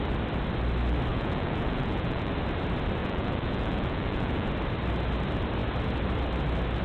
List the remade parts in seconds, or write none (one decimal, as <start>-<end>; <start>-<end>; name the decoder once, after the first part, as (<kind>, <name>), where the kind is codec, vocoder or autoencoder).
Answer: 1.1-2.3 (vocoder, Vocos); 3.0-4.5